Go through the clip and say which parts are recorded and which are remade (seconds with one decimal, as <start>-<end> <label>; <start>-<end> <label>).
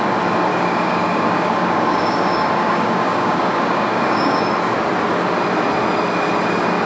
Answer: 0.0-0.5 recorded; 0.5-4.4 remade; 4.4-6.9 recorded